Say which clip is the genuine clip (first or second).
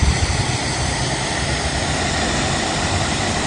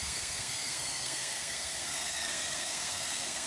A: first